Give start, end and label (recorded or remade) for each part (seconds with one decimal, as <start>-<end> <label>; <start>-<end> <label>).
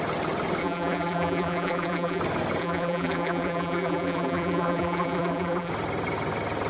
0.0-0.6 recorded; 0.6-2.2 remade; 2.2-2.6 recorded; 2.6-5.7 remade; 5.7-6.7 recorded